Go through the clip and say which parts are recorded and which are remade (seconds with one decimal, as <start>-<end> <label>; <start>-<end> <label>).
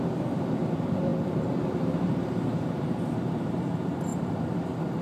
0.0-4.1 remade; 4.1-5.0 recorded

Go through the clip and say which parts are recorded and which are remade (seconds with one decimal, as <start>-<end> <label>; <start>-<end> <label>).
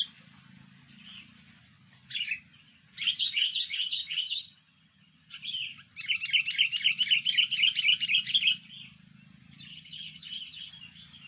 0.0-3.2 recorded; 3.2-5.4 remade; 5.4-9.7 recorded; 9.7-10.7 remade; 10.7-11.3 recorded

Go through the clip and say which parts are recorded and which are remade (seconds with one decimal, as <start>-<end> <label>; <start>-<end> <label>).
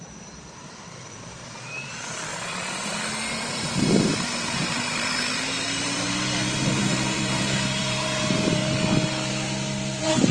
0.0-2.3 remade; 2.3-3.3 recorded; 3.3-8.6 remade; 8.6-9.3 recorded; 9.3-10.3 remade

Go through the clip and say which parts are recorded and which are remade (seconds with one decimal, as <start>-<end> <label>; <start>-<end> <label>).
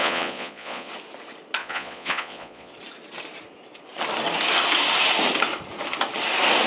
0.0-0.9 remade; 0.9-1.6 recorded; 1.6-2.7 remade; 2.7-6.7 recorded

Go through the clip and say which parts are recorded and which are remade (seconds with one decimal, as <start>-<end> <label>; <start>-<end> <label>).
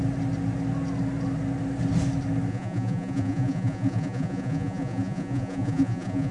0.0-2.5 recorded; 2.5-6.3 remade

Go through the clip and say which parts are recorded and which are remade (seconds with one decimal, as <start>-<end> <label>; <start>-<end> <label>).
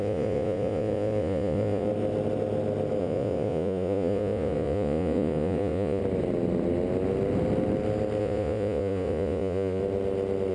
0.0-1.9 remade; 1.9-3.0 recorded; 3.0-6.0 remade; 6.0-8.2 recorded; 8.2-9.8 remade; 9.8-10.5 recorded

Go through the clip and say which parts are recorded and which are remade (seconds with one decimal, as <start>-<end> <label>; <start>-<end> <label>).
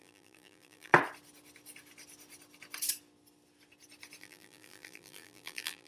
0.0-0.9 remade; 0.9-4.2 recorded; 4.2-5.9 remade